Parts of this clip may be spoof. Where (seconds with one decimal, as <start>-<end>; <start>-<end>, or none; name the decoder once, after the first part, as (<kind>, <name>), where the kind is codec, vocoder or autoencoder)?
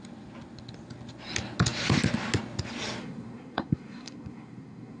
3.0-5.0 (codec, SNAC)